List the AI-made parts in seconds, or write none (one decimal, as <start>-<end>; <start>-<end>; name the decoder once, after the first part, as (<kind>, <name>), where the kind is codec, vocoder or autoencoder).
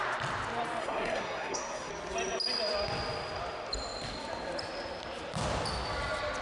0.8-1.9 (codec, SNAC)